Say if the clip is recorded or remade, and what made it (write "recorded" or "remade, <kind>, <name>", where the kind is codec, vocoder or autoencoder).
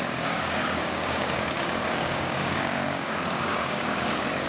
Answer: remade, codec, DAC